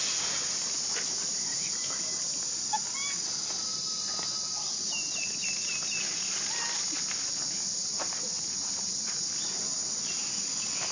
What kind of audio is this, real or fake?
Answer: real